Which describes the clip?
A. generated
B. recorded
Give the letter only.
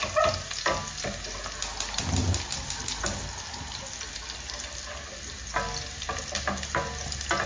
B